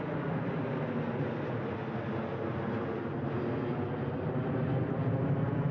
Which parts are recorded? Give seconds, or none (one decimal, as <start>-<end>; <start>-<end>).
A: 0.0-5.7